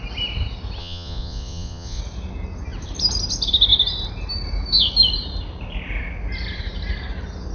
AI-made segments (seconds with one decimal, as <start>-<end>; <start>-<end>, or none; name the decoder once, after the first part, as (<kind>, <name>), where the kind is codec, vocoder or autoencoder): 0.8-2.0 (vocoder, Vocos)